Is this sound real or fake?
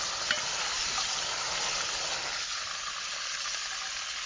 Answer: real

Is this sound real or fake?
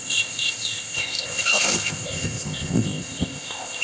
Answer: fake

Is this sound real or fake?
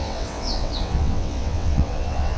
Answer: fake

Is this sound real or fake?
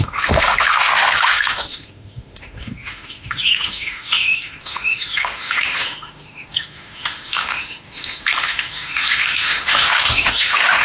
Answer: fake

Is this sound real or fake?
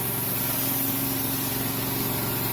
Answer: real